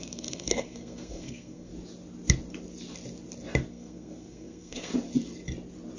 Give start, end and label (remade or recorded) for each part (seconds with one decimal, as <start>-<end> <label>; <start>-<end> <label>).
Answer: 0.0-1.7 remade; 1.7-3.7 recorded; 3.7-4.9 remade; 4.9-6.0 recorded